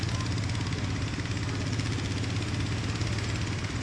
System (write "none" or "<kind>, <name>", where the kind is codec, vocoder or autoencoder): none